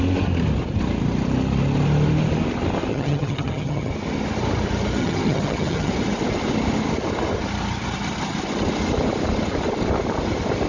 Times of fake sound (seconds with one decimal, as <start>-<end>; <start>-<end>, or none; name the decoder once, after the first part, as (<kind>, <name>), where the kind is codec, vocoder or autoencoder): 2.9-3.9 (vocoder, HiFi-GAN); 5.0-5.9